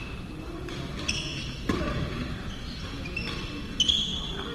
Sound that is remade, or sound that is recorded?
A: recorded